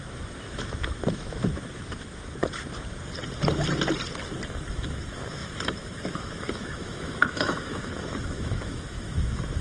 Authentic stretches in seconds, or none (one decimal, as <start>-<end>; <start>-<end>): 2.4-4.7